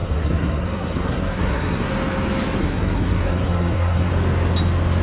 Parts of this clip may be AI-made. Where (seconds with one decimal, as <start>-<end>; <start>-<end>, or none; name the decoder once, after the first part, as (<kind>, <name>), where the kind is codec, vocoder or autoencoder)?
0.0-1.9 (codec, SNAC); 2.6-4.1